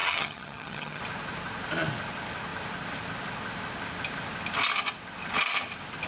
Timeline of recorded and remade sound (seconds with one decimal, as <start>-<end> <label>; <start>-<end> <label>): 0.0-1.0 remade; 1.0-6.1 recorded